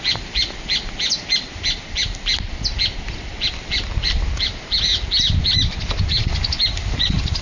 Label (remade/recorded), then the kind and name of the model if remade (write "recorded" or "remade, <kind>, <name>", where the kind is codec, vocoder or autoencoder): recorded